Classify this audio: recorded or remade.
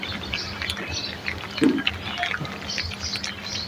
recorded